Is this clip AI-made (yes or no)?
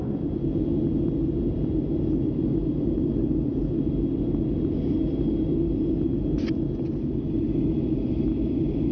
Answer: no